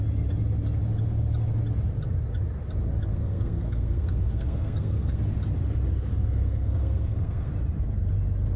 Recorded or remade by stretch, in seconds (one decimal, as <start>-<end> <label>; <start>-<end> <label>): 0.0-3.1 recorded; 3.1-5.2 remade; 5.2-6.1 recorded; 6.1-7.5 remade; 7.5-8.6 recorded